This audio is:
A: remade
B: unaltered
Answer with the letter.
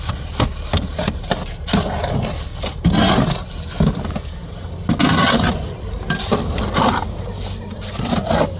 B